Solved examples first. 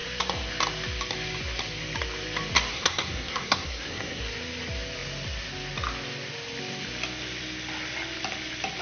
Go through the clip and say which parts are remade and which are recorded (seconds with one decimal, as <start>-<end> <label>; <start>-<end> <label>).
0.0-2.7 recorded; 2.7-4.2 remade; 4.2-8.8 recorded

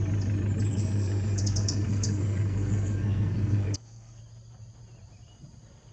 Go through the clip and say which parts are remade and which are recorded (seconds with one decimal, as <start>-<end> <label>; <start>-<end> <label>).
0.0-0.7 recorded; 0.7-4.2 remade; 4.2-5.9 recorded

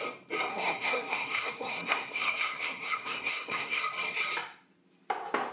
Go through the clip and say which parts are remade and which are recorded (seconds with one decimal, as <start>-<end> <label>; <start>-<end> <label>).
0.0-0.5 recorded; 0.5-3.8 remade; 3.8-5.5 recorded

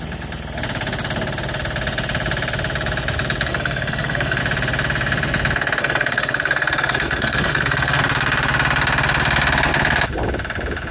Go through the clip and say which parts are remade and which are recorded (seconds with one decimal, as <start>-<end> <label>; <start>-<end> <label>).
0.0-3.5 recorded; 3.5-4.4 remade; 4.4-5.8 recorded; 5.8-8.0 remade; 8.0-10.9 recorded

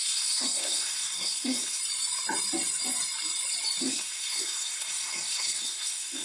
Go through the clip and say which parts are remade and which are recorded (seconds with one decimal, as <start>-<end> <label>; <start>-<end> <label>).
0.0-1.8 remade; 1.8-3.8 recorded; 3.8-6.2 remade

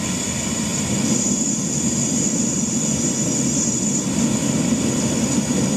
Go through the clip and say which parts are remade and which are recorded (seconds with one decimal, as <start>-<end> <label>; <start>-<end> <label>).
0.0-5.8 recorded

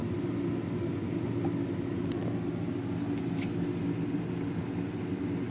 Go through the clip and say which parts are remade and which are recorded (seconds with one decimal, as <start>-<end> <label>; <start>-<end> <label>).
0.0-5.5 recorded

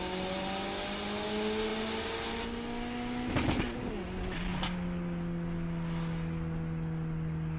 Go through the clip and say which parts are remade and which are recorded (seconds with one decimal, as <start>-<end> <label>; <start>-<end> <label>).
0.0-7.6 recorded